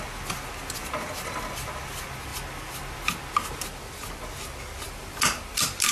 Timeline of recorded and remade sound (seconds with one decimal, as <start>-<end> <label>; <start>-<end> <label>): 0.0-5.9 recorded